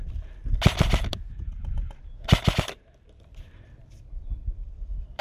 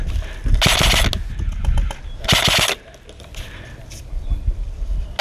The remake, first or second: first